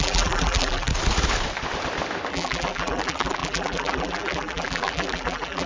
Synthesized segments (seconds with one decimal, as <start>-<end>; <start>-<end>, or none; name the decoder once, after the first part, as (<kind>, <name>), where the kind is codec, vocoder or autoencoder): 0.0-0.9 (vocoder, BigVGAN v2); 2.3-5.7